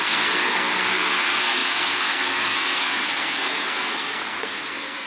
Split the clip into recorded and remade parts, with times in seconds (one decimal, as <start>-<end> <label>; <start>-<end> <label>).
0.0-5.1 remade